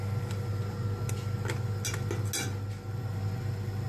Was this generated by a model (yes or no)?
no